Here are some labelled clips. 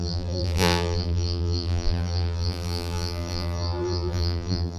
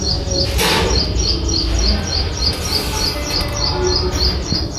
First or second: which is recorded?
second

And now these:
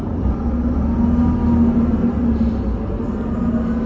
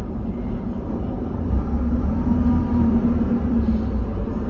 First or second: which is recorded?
first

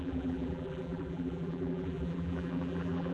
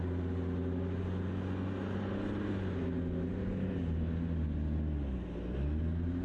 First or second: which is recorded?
second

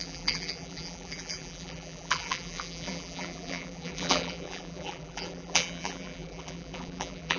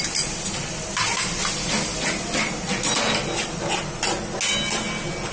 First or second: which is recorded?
second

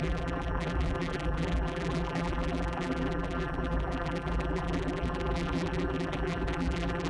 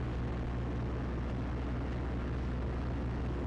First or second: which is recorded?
second